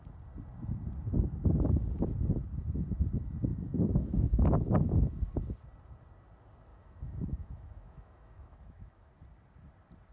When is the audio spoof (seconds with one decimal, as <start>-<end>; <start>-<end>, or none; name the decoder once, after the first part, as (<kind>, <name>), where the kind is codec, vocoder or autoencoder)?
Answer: 3.5-4.5 (autoencoder, DAC-VAE); 6.7-9.1